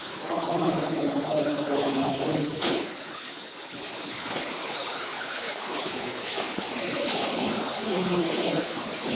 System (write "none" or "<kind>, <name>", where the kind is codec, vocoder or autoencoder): codec, HILCodec